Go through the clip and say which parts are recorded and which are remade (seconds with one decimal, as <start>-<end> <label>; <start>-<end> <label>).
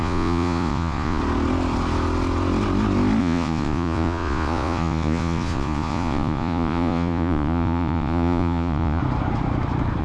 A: 0.0-1.2 remade; 1.2-3.2 recorded; 3.2-9.0 remade; 9.0-10.0 recorded